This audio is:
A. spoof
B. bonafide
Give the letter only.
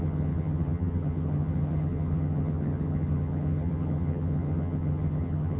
A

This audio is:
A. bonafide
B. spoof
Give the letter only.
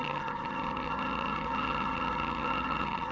B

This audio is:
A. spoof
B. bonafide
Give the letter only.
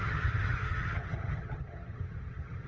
A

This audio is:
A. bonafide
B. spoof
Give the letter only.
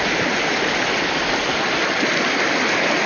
A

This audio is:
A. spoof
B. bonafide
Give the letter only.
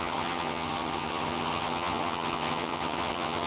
A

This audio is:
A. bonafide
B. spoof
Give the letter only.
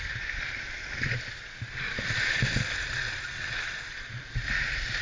A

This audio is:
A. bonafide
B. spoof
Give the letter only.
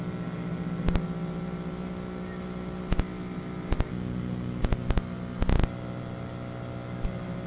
A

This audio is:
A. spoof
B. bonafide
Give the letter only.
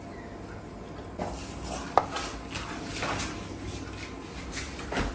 B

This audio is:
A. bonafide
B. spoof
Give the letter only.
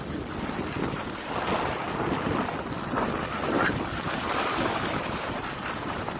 A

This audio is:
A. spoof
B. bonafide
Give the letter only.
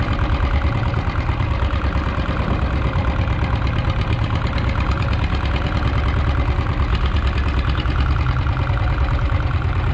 B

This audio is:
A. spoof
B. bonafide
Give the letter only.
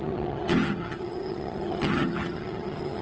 A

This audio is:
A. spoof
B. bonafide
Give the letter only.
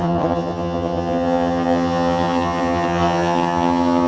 A